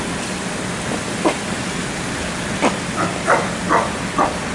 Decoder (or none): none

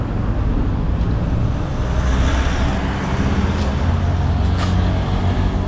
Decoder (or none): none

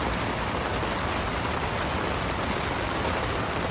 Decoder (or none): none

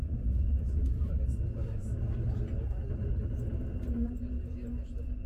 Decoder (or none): none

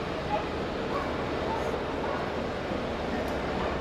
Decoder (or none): none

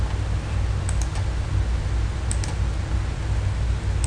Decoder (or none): none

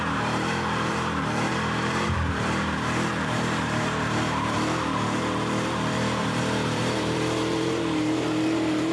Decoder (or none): vocoder, BigVGAN v2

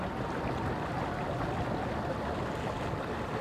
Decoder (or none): none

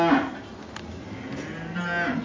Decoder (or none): none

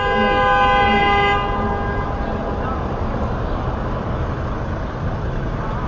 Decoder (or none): none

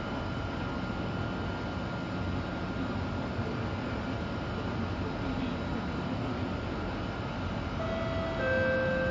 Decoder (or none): none